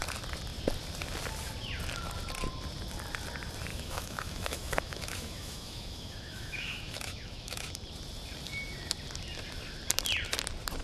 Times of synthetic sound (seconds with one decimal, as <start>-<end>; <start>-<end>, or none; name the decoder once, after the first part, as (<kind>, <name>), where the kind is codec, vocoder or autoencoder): 3.7-7.7 (autoencoder, DAC-VAE)